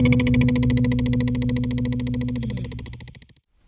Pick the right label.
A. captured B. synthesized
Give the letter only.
A